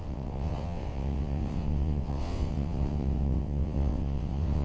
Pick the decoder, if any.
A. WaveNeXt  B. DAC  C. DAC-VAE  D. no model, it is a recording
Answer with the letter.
A